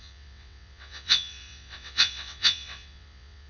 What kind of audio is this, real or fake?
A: fake